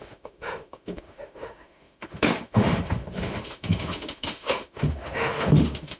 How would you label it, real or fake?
fake